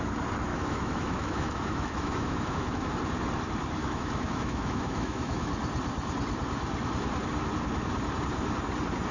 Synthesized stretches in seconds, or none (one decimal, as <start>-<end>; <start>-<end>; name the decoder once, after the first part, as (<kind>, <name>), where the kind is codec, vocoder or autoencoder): 0.5-2.9 (autoencoder, DAC-VAE); 3.8-5.5